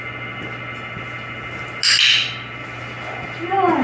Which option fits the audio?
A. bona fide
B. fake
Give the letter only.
A